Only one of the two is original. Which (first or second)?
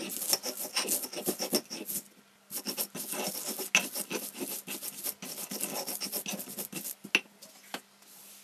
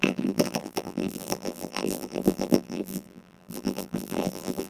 first